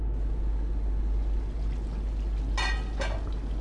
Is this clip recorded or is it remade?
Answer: recorded